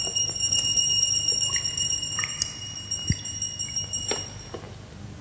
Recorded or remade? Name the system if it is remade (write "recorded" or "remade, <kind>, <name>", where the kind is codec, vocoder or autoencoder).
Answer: recorded